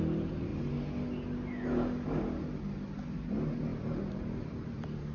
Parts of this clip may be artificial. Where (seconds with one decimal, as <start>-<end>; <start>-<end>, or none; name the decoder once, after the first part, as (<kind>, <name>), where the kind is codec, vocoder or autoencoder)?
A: 0.0-0.5 (vocoder, BigVGAN v2); 3.1-5.1